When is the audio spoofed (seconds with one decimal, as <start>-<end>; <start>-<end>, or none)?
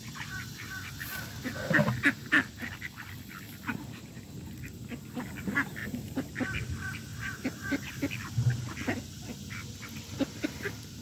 3.7-4.7; 5.8-6.4; 7.1-7.9